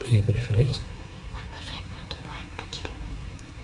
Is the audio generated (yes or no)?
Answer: yes